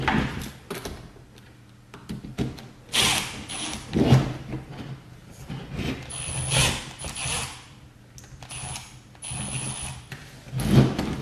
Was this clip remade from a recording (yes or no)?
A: no